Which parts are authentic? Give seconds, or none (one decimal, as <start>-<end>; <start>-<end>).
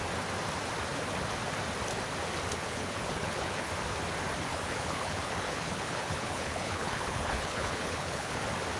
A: 0.0-2.6; 3.7-4.5; 8.4-8.8